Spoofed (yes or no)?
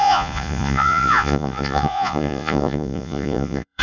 yes